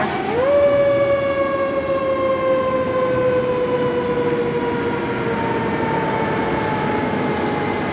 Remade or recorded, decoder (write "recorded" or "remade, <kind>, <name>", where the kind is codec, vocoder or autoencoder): recorded